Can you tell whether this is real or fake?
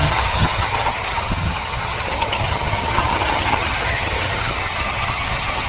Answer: fake